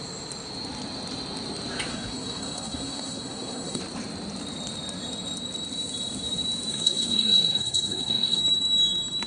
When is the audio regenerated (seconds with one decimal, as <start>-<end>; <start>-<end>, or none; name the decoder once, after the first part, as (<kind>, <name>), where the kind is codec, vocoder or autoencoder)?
1.9-3.8 (codec, SNAC); 6.7-8.4